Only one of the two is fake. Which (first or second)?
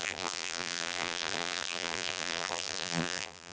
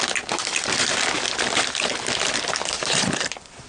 first